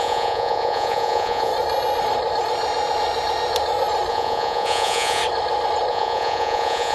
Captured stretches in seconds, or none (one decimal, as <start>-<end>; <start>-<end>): 1.5-4.1; 5.2-5.9